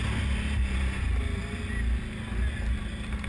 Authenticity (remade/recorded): recorded